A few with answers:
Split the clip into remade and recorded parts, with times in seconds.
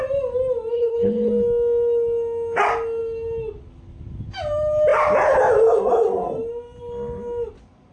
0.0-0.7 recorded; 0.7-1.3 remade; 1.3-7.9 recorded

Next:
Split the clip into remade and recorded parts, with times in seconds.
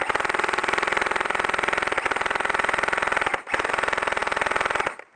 0.0-5.2 recorded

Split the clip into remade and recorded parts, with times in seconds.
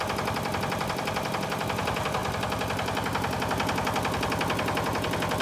0.0-2.2 remade; 2.2-5.4 recorded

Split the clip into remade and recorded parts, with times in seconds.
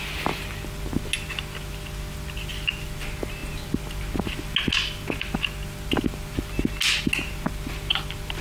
0.0-8.4 recorded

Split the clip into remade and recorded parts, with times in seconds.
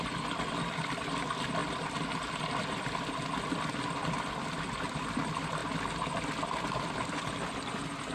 0.0-8.1 recorded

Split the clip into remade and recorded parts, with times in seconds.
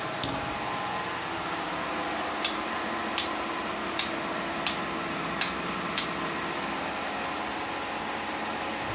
0.0-8.9 recorded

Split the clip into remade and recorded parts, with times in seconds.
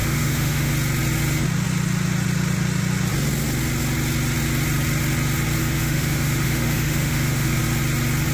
0.0-0.7 remade; 0.7-5.6 recorded; 5.6-7.6 remade; 7.6-8.3 recorded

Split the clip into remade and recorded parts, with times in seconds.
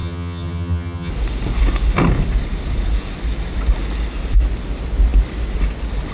0.0-1.1 remade; 1.1-6.1 recorded